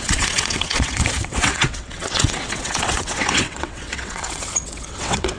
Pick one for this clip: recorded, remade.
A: remade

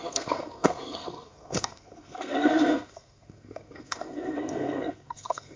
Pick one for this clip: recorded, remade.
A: remade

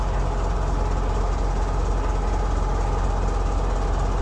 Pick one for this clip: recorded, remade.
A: recorded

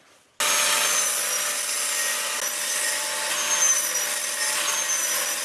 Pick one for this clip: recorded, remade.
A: recorded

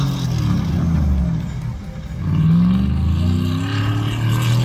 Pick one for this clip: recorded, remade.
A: recorded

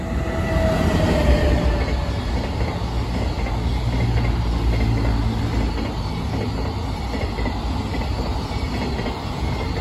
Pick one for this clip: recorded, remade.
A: recorded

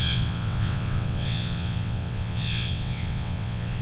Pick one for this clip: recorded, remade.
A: remade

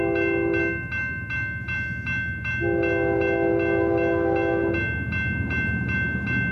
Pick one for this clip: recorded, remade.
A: recorded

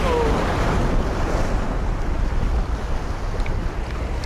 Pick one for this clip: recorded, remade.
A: recorded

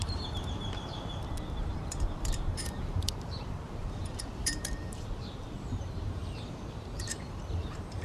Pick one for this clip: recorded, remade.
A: remade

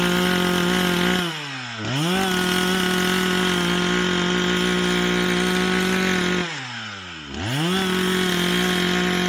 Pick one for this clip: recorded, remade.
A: recorded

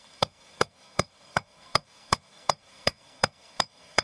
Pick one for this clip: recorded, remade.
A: remade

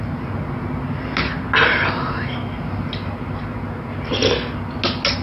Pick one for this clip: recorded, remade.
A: recorded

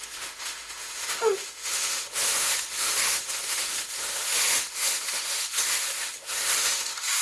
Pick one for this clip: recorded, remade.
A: remade